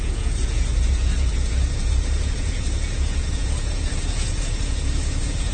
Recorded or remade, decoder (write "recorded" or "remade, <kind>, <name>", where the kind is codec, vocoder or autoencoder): remade, vocoder, Vocos